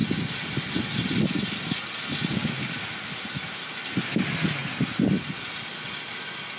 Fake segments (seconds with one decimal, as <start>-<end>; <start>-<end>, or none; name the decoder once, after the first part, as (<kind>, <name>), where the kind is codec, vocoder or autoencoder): 2.3-2.8 (codec, DAC)